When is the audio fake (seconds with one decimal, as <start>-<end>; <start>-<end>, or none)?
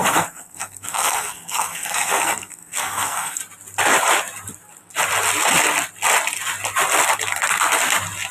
0.0-3.4